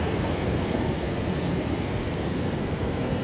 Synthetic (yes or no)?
yes